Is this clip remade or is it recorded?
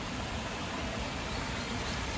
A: remade